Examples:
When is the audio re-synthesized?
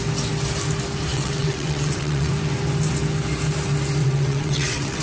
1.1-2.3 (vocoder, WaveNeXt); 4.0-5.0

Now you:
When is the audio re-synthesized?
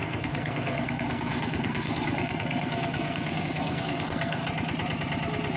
0.0-4.4 (codec, SNAC)